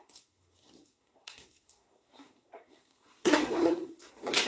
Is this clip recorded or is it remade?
remade